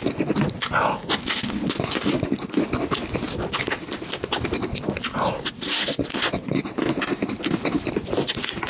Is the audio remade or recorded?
recorded